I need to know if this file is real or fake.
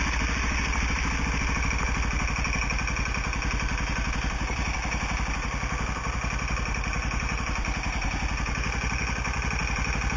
real